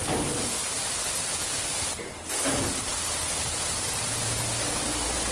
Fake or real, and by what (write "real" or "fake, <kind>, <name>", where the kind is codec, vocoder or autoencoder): real